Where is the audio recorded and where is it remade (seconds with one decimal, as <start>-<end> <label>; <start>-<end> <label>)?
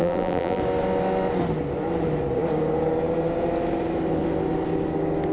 0.0-0.6 remade; 0.6-5.3 recorded